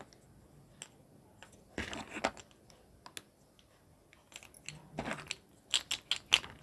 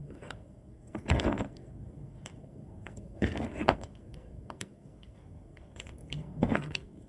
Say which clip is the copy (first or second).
second